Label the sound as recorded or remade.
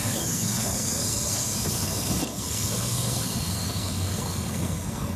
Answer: remade